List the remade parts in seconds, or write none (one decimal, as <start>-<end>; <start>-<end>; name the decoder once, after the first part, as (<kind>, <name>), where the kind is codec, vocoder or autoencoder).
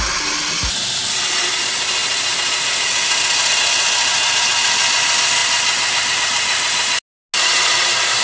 none